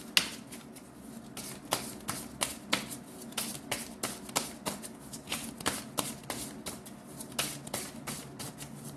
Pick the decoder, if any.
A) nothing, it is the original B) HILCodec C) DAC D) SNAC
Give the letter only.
A